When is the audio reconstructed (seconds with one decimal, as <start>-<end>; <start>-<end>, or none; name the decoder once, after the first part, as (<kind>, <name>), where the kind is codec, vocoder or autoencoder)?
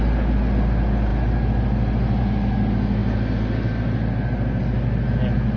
none